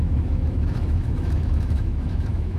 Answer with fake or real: fake